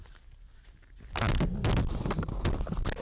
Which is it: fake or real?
real